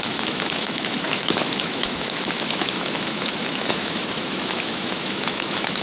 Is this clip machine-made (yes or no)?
yes